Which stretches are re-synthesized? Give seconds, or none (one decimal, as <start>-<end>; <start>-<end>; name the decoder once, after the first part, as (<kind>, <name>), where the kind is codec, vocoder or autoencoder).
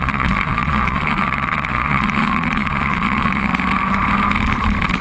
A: 0.0-3.5 (vocoder, Vocos)